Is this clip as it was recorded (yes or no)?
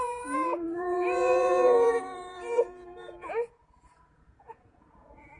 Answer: no